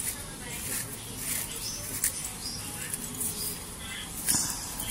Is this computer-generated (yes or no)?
no